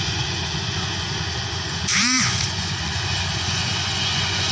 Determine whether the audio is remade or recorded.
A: remade